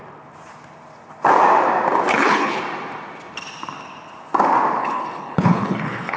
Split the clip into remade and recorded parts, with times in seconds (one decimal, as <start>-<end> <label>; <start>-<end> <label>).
0.0-2.1 recorded; 2.1-2.6 remade; 2.6-4.8 recorded; 4.8-6.2 remade